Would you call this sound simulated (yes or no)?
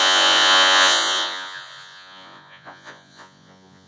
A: yes